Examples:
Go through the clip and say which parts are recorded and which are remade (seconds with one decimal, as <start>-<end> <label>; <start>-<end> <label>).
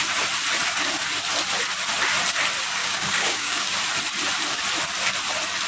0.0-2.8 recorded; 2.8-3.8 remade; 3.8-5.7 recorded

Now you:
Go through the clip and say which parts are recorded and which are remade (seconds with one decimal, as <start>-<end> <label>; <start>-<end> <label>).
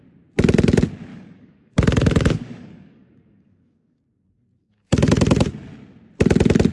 0.0-1.1 recorded; 1.1-4.0 remade; 4.0-4.6 recorded; 4.6-5.1 remade; 5.1-6.7 recorded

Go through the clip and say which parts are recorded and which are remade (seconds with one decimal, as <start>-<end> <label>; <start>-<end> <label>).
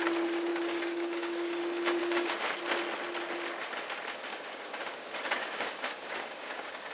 0.0-0.5 recorded; 0.5-1.6 remade; 1.6-2.0 recorded; 2.0-2.6 remade; 2.6-4.3 recorded; 4.3-6.9 remade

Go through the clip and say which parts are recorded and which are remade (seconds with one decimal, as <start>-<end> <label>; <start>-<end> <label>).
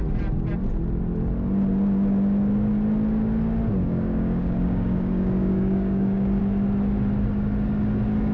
0.0-3.8 recorded; 3.8-6.4 remade; 6.4-8.3 recorded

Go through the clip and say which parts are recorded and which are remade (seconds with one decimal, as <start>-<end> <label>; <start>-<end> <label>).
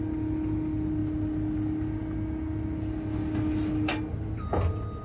0.0-5.0 recorded